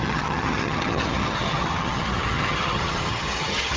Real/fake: fake